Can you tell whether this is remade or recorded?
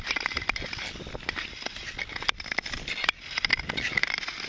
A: recorded